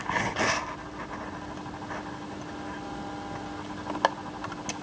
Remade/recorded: recorded